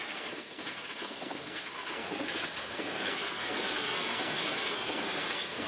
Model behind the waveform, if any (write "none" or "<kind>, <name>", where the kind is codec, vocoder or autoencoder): codec, SNAC